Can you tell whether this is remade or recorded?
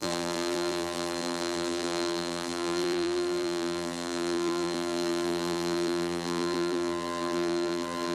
remade